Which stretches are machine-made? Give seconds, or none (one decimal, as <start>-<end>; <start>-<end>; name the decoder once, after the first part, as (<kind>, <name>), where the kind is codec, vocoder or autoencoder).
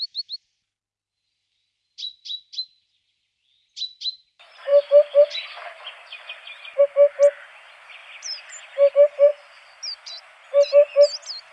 8.0-8.9 (vocoder, BigVGAN v2); 9.3-10.7